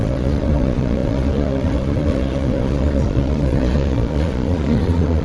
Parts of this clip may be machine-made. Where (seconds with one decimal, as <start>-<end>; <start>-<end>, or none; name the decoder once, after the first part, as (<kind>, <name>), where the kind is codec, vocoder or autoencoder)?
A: 0.0-5.2 (vocoder, Vocos)